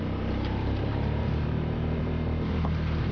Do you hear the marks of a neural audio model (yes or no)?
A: yes